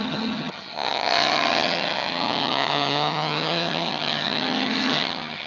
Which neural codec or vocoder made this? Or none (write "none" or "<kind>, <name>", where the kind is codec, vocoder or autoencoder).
vocoder, HiFi-GAN